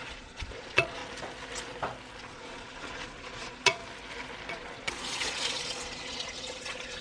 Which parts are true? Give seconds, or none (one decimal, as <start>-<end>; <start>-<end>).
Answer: 1.0-2.2; 3.8-4.5